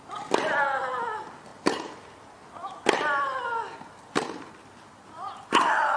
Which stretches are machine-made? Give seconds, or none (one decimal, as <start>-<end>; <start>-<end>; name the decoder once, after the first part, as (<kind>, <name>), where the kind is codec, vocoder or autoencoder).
none